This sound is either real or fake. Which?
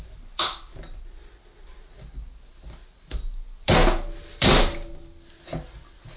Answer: real